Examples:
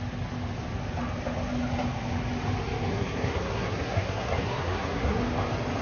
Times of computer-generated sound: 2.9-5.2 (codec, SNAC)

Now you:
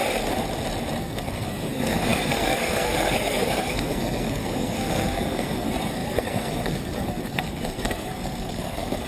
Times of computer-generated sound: 1.0-9.1 (codec, SNAC)

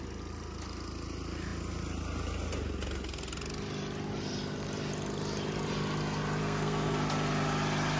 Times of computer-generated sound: 6.4-7.0 (codec, SNAC)

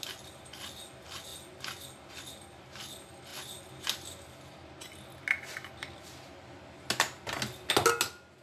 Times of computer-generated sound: none

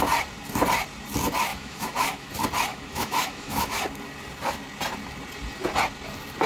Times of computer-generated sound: 1.5-2.3 (autoencoder, DAC-VAE); 2.7-3.8